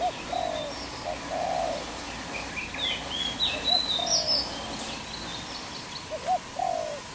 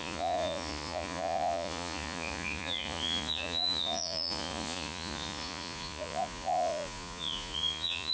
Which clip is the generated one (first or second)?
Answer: second